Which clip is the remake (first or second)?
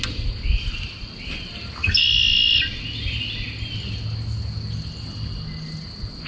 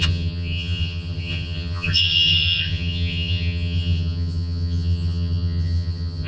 second